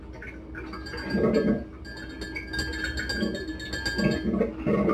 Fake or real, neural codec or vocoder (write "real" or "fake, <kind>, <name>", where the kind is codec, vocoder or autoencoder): real